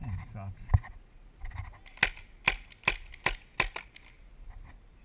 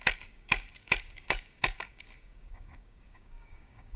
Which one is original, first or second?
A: first